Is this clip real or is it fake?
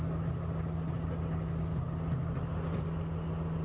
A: real